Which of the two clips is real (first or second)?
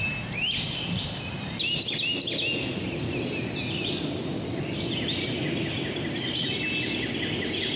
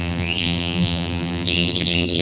first